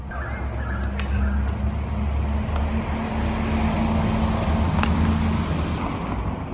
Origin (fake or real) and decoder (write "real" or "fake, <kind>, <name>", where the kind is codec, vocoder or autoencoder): real